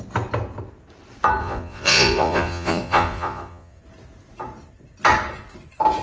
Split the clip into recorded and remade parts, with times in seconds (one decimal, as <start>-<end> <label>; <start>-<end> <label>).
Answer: 0.0-1.4 recorded; 1.4-3.8 remade; 3.8-6.0 recorded